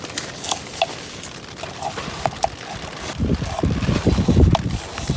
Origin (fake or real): real